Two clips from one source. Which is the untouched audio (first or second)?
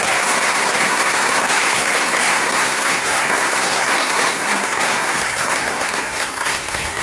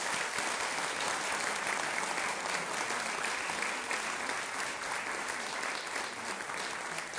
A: second